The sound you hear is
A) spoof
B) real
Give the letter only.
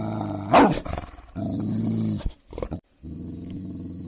B